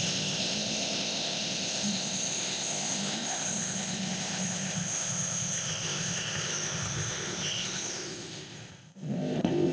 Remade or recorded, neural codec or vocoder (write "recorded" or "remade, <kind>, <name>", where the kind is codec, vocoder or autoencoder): remade, codec, ZipCodec